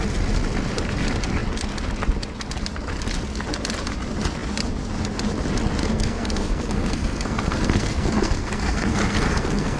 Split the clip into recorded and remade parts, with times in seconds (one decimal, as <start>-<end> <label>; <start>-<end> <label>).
0.0-5.8 recorded; 5.8-9.8 remade